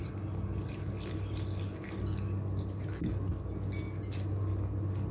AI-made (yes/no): no